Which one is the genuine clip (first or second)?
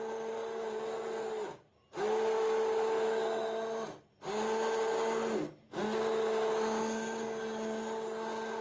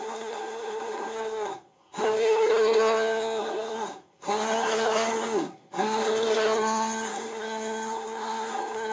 first